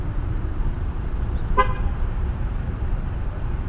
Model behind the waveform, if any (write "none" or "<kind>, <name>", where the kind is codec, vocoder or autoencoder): vocoder, BigVGAN v2